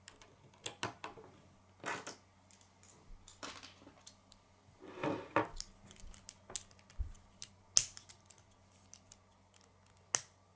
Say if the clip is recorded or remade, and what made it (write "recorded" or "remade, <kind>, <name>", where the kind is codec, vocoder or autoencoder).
recorded